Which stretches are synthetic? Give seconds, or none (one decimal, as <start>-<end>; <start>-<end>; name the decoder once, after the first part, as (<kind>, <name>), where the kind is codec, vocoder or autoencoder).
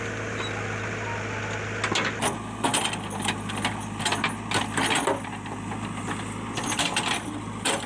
none